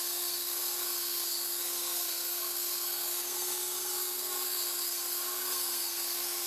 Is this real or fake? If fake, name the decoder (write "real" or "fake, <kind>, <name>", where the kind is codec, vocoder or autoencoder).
fake, codec, SNAC